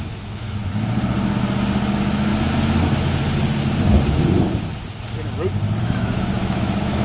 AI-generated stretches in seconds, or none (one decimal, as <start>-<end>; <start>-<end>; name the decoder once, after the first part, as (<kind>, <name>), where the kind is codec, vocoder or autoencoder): 0.0-0.6 (autoencoder, DAC-VAE); 1.9-2.3; 5.8-7.0